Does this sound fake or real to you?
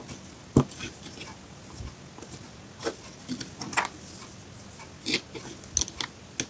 real